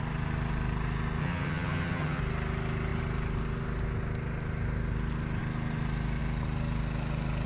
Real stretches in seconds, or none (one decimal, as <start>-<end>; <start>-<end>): 0.0-1.2; 2.2-7.5